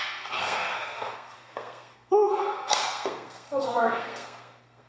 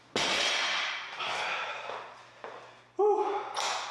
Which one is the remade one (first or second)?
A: first